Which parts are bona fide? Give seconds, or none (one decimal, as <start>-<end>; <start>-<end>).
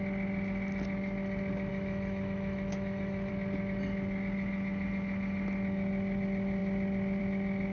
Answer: 0.0-1.7; 3.3-7.7